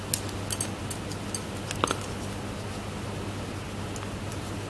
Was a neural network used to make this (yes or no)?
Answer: no